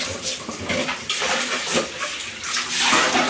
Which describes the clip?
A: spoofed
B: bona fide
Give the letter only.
B